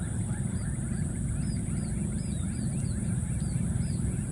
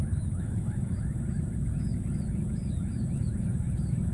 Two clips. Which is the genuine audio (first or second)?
first